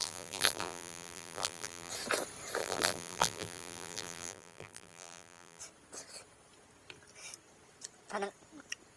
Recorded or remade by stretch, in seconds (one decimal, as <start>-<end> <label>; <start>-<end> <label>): 0.0-1.9 remade; 1.9-2.6 recorded; 2.6-5.6 remade; 5.6-9.0 recorded

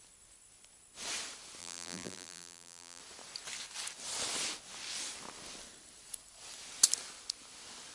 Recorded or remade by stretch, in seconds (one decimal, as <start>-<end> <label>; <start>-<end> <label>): 0.0-1.6 recorded; 1.6-3.0 remade; 3.0-7.9 recorded

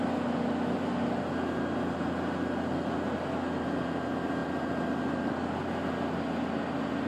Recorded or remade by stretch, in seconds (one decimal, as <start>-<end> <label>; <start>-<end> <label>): 0.0-7.1 recorded

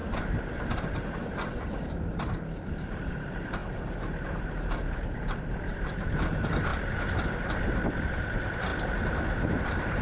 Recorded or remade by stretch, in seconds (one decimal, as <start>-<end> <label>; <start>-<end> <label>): 0.0-6.7 remade; 6.7-7.9 recorded; 7.9-8.7 remade; 8.7-9.3 recorded; 9.3-10.0 remade

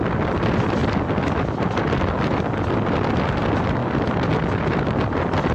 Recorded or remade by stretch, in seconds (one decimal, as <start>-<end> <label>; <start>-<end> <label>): 0.0-0.8 recorded; 0.8-1.8 remade; 1.8-5.5 recorded

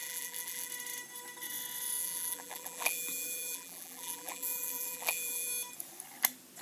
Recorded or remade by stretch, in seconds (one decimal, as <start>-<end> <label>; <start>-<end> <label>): 0.0-0.7 remade; 0.7-2.0 recorded; 2.0-5.5 remade; 5.5-6.6 recorded

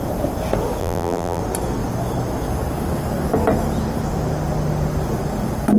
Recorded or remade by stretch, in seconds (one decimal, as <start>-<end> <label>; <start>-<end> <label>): 0.0-0.8 recorded; 0.8-1.4 remade; 1.4-5.8 recorded

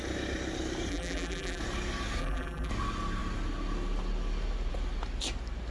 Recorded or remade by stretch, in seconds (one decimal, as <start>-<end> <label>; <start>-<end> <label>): 0.0-0.9 recorded; 0.9-1.6 remade; 1.6-2.2 recorded; 2.2-2.7 remade; 2.7-5.7 recorded